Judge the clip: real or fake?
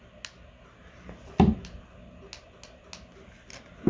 real